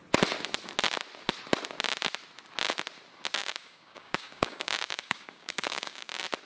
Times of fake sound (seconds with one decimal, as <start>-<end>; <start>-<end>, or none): 3.4-6.1